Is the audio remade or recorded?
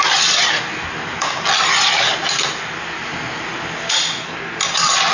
recorded